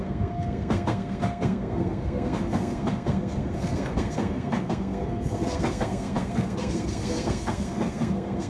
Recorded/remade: remade